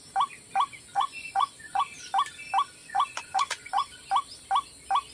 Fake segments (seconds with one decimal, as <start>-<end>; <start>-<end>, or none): 0.9-1.8; 2.8-3.9